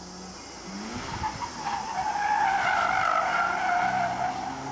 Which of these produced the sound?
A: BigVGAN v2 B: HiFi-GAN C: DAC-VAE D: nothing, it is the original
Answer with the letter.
D